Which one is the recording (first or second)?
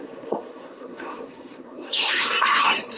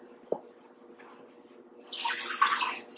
second